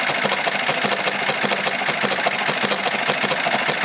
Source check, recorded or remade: recorded